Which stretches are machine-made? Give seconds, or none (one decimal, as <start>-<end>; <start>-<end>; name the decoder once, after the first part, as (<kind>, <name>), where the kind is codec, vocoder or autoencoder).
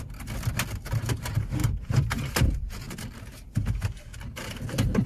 1.6-3.0 (vocoder, BigVGAN v2)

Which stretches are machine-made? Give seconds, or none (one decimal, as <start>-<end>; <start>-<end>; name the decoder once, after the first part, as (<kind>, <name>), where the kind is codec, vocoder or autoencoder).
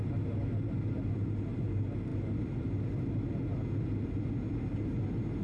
none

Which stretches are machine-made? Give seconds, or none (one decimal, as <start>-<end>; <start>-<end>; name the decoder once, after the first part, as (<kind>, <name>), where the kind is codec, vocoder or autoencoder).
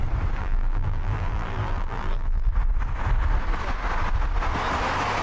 0.4-2.5 (vocoder, BigVGAN v2)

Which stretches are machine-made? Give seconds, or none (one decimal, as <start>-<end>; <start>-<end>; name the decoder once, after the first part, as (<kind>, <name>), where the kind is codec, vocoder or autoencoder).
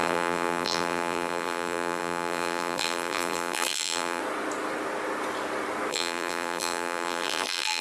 0.0-4.2 (vocoder, BigVGAN v2); 5.9-7.8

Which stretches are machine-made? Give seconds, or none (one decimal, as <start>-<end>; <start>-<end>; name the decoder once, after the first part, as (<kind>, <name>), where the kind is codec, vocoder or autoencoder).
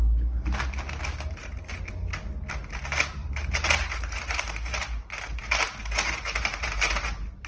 1.1-1.9 (vocoder, BigVGAN v2); 3.2-7.5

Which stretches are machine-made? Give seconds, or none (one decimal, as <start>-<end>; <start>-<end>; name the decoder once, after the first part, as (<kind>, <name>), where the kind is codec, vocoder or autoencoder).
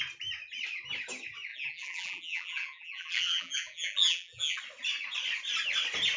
1.5-4.6 (vocoder, BigVGAN v2)